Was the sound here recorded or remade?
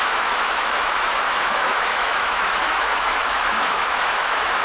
remade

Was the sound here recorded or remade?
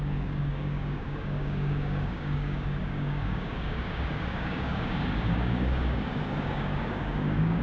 remade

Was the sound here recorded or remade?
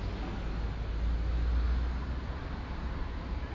recorded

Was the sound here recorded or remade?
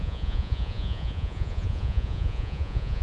remade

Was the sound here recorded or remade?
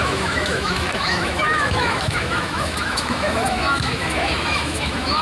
remade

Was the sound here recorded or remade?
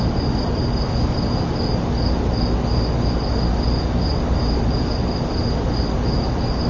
recorded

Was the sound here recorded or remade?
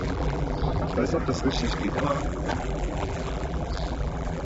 remade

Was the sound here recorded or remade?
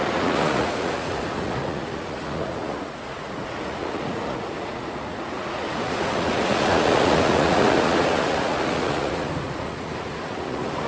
remade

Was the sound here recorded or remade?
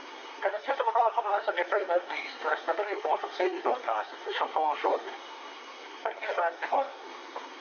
remade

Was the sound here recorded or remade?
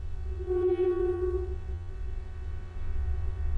remade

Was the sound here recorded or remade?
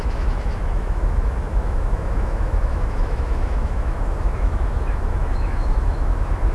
remade